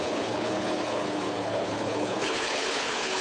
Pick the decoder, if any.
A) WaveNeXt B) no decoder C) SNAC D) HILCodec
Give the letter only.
D